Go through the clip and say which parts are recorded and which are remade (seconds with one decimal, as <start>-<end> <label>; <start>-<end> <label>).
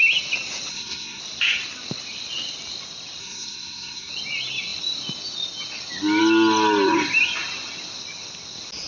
0.0-0.7 recorded; 0.7-1.2 remade; 1.2-3.2 recorded; 3.2-4.1 remade; 4.1-8.9 recorded